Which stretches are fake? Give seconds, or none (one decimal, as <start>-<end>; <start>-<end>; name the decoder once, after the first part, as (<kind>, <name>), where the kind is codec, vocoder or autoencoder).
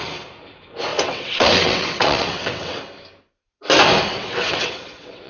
0.9-2.8 (vocoder, WaveNeXt); 4.1-5.3